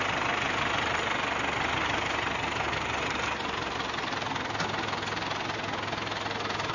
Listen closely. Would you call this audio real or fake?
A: real